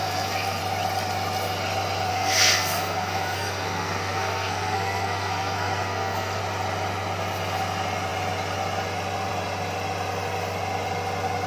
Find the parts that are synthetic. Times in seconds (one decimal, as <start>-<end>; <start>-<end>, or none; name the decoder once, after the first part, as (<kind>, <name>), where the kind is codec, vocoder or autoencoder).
0.0-0.6 (codec, SNAC); 2.1-6.4